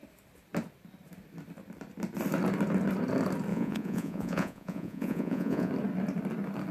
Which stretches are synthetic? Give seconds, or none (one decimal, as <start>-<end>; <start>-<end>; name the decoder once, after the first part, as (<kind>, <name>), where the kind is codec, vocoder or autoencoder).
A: 3.5-5.7 (vocoder, Vocos)